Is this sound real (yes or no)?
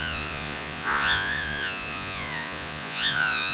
no